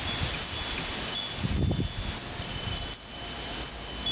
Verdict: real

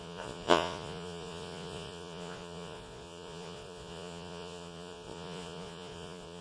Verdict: fake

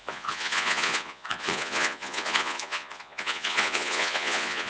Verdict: fake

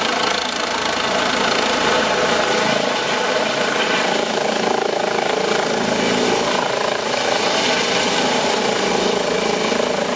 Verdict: real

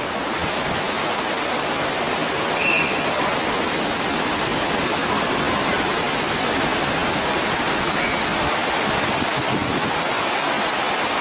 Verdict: real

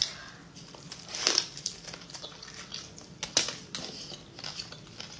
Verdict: real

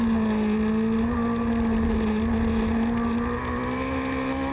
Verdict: real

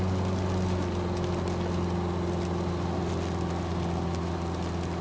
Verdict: real